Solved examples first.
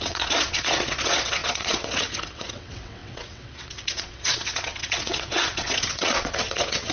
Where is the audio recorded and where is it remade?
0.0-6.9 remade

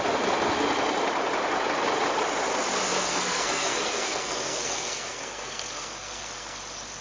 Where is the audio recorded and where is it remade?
0.0-2.9 recorded; 2.9-6.6 remade; 6.6-7.0 recorded

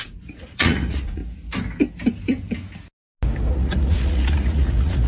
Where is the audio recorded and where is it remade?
0.0-1.2 remade; 1.2-3.5 recorded; 3.5-5.1 remade

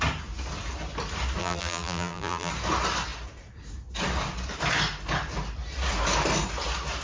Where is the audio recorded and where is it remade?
0.0-1.4 recorded; 1.4-2.5 remade; 2.5-7.0 recorded

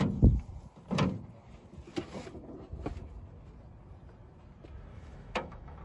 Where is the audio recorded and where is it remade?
0.0-4.9 recorded; 4.9-5.8 remade

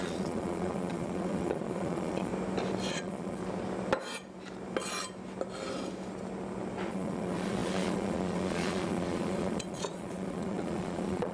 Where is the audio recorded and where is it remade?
0.0-2.3 remade; 2.3-2.9 recorded; 2.9-3.4 remade; 3.4-6.9 recorded; 6.9-11.3 remade